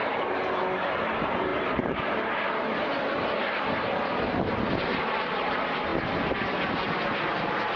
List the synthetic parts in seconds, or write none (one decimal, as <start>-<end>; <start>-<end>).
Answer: 1.5-2.4